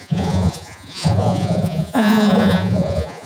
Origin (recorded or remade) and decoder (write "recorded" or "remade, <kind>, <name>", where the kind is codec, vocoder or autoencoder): remade, vocoder, Vocos